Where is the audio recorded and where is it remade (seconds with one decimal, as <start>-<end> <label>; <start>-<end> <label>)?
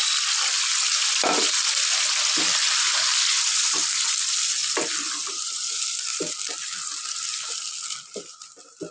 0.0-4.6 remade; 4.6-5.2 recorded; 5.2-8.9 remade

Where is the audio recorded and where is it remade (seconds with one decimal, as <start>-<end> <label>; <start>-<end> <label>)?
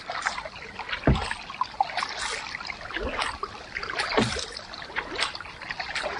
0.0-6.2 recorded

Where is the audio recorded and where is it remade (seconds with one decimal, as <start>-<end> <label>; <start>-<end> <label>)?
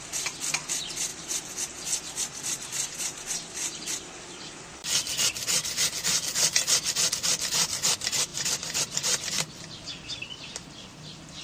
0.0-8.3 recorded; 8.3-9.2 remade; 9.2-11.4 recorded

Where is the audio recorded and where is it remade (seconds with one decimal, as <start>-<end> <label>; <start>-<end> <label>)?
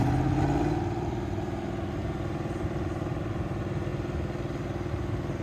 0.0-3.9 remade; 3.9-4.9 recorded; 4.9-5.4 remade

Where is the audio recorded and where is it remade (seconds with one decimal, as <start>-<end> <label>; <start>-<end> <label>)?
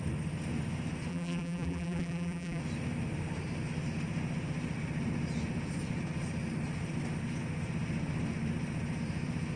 0.0-1.1 recorded; 1.1-2.6 remade; 2.6-9.6 recorded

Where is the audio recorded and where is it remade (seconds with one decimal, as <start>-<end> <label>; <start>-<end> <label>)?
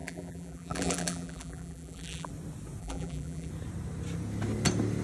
0.0-2.3 remade; 2.3-2.8 recorded; 2.8-3.5 remade; 3.5-5.0 recorded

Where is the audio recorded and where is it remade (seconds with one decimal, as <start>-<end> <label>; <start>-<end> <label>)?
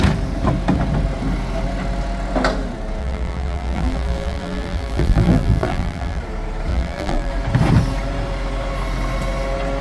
0.0-3.0 recorded; 3.0-6.2 remade; 6.2-6.7 recorded; 6.7-7.3 remade; 7.3-9.8 recorded